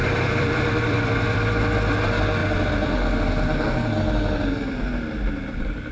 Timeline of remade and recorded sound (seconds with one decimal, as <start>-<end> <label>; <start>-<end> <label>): 0.0-1.5 remade; 1.5-5.9 recorded